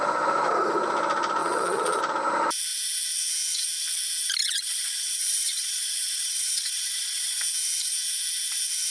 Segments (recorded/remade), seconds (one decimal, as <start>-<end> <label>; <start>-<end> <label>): 0.0-1.4 recorded; 1.4-2.0 remade; 2.0-4.4 recorded; 4.4-7.4 remade; 7.4-8.9 recorded